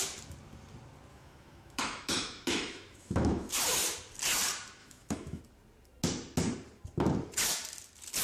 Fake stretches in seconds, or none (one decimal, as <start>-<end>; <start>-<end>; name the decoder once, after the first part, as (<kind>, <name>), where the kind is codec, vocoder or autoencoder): 1.1-3.5 (autoencoder, DAC-VAE); 4.8-5.4